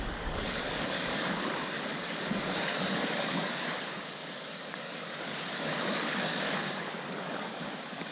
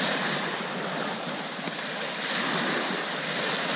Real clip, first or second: second